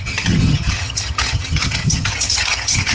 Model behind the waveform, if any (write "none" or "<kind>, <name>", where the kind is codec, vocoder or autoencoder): vocoder, HiFi-GAN